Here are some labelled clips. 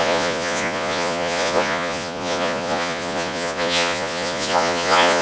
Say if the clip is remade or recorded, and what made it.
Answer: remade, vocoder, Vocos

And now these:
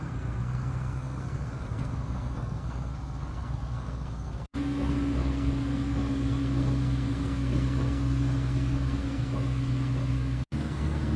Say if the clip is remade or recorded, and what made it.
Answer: remade, codec, SNAC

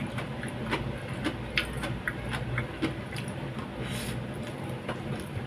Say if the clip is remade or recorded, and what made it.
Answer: recorded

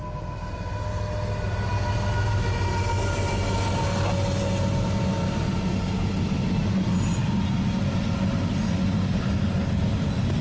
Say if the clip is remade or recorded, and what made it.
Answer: recorded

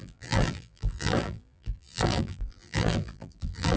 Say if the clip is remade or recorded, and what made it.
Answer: remade, vocoder, BigVGAN v2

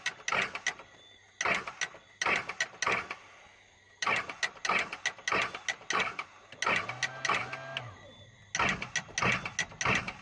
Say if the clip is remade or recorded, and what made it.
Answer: recorded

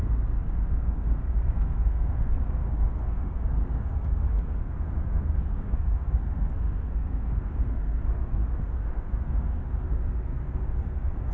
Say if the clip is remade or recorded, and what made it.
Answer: remade, codec, SNAC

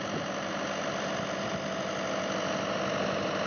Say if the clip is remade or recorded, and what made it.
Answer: recorded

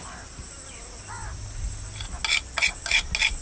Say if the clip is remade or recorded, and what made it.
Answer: recorded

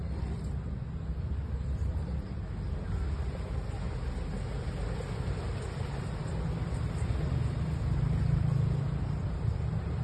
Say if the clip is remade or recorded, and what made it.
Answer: recorded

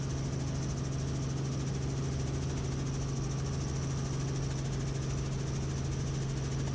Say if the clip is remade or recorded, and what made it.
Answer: recorded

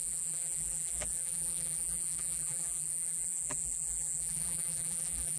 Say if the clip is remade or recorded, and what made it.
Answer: remade, vocoder, BigVGAN v2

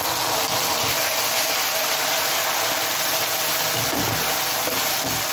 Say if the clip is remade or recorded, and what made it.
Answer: recorded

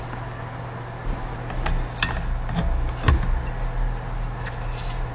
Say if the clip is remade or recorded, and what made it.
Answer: recorded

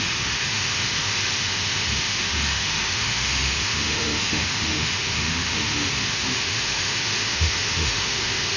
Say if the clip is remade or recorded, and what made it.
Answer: remade, autoencoder, DAC-VAE